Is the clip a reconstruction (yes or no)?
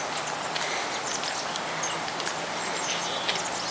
no